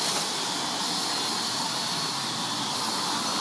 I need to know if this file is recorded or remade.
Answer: recorded